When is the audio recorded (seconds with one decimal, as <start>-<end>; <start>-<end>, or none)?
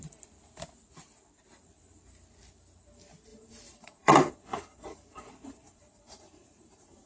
0.0-3.3